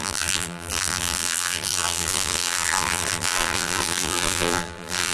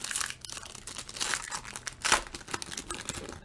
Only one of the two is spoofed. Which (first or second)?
first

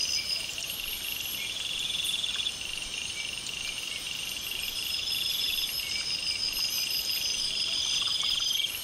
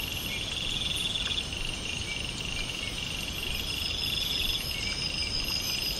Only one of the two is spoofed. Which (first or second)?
first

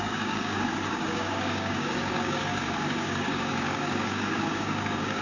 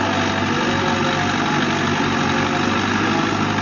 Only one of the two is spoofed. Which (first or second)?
first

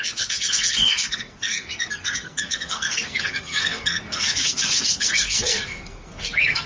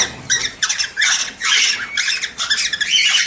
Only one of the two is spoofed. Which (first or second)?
first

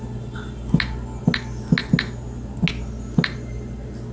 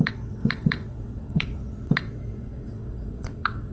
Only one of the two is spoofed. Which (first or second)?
second